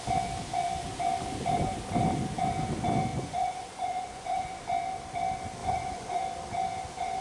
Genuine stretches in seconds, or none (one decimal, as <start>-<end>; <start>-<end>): 0.0-3.1; 4.5-5.6; 6.2-7.2